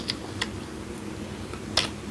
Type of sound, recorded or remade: recorded